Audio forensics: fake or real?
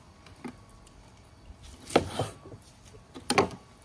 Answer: real